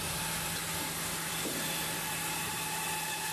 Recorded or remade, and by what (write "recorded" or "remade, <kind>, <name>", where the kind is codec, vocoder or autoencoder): recorded